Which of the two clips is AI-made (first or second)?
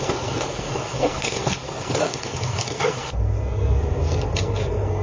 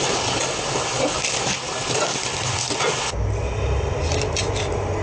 first